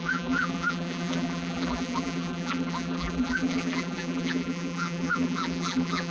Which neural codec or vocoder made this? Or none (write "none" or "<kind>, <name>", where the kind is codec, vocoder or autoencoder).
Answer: vocoder, BigVGAN v2